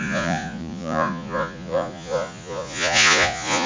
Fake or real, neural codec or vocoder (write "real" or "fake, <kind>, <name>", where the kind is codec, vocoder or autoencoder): fake, vocoder, Vocos